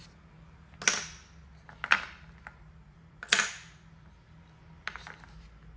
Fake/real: real